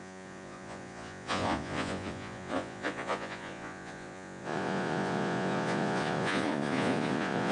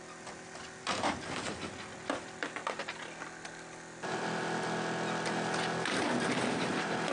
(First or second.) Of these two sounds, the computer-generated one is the first